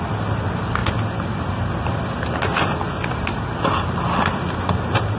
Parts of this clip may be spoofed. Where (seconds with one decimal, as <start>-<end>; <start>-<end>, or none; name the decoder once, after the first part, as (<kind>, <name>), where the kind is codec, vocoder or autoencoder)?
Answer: none